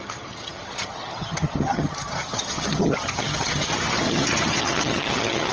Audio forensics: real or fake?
fake